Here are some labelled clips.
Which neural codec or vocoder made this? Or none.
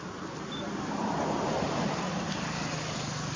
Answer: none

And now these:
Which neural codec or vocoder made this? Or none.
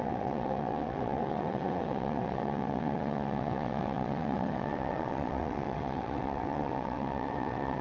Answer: vocoder, WaveNeXt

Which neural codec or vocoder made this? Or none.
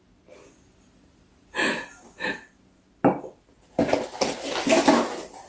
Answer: none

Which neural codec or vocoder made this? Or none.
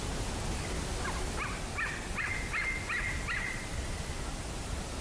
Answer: none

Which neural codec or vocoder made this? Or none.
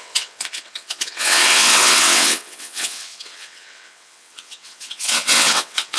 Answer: vocoder, WaveNeXt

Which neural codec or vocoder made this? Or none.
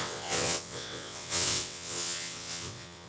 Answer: vocoder, WaveNeXt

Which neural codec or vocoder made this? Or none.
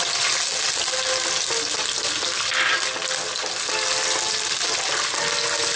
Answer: none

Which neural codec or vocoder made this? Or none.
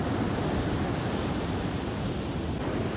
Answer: none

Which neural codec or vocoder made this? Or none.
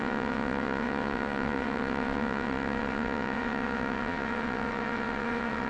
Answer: vocoder, WaveNeXt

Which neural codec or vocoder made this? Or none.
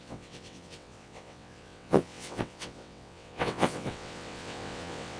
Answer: vocoder, WaveNeXt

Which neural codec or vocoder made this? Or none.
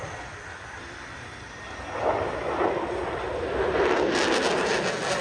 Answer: none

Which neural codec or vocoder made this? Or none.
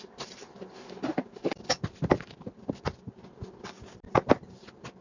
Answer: none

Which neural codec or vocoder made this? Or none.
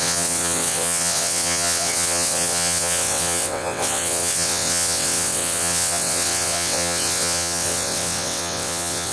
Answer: vocoder, WaveNeXt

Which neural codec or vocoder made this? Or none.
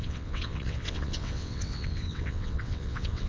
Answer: vocoder, WaveNeXt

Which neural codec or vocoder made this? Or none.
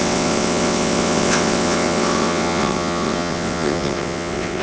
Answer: vocoder, WaveNeXt